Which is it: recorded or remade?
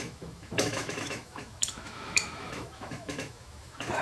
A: remade